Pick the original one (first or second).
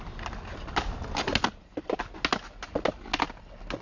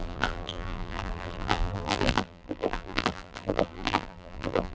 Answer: first